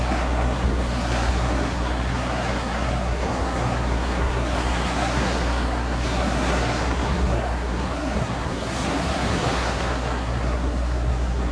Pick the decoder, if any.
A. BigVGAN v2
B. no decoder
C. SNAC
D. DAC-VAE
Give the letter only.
C